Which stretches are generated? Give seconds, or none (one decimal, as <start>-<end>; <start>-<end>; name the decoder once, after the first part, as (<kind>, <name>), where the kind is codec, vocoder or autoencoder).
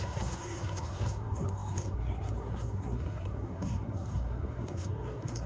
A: 0.0-5.5 (codec, SNAC)